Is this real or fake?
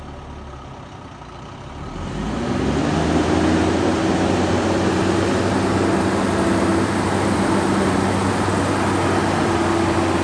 real